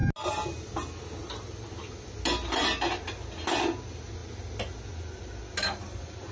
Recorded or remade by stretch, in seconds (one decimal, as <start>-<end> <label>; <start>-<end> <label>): 0.0-6.3 recorded